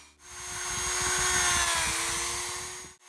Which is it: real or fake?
real